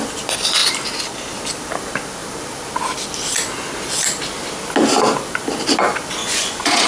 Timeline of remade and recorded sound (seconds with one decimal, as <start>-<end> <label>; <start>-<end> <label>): 0.0-6.2 recorded; 6.2-6.9 remade